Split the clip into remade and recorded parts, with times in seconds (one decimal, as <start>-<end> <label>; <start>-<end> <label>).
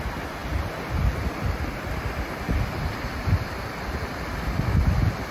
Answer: 0.0-5.3 recorded